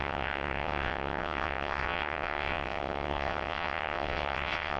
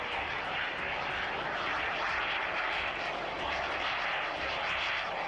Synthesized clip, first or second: first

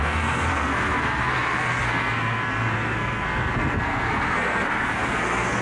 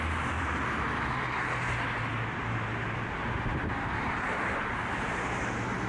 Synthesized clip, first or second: first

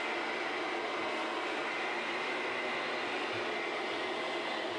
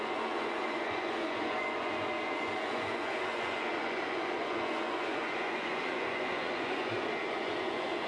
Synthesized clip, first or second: second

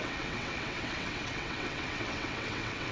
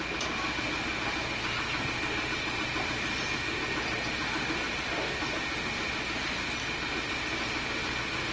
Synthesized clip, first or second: first